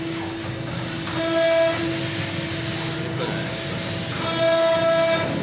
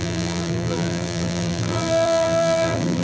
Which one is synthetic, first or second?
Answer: second